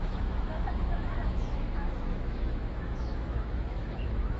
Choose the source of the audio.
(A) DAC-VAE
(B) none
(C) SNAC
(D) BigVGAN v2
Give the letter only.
A